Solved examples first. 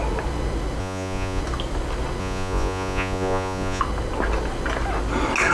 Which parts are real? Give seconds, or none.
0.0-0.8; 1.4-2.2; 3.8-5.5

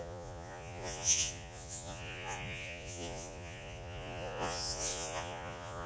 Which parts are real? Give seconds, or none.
none

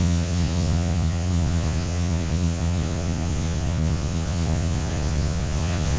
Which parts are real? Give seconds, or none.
none

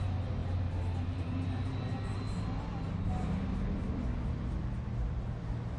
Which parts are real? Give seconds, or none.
0.0-5.8

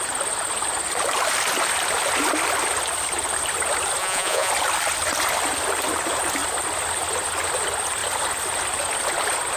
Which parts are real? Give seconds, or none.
0.0-4.0; 4.5-9.6